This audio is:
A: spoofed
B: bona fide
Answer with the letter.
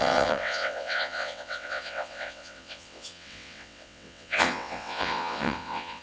A